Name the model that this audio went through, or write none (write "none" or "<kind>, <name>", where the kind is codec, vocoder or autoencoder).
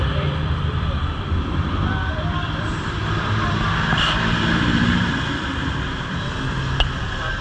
vocoder, BigVGAN v2